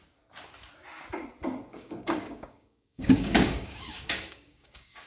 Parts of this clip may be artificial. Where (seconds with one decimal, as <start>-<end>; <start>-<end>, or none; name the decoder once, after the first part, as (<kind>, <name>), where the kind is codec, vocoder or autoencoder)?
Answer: 1.7-5.1 (codec, DAC)